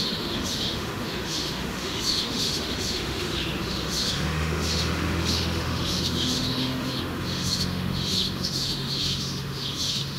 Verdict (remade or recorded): remade